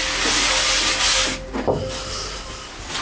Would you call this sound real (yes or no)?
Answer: yes